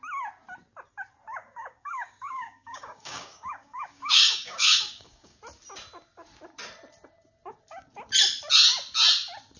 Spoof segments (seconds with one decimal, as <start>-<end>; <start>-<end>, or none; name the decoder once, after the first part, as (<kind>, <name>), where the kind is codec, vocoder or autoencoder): 1.4-5.4 (codec, DAC)